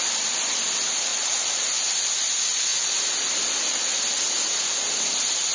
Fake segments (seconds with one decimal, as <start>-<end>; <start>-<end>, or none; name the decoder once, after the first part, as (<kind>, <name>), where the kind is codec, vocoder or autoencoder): none